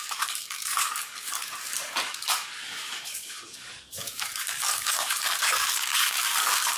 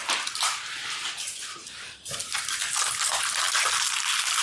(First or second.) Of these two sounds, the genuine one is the second